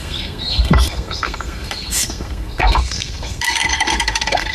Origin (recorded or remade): remade